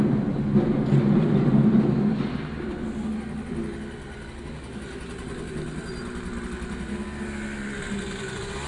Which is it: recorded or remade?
recorded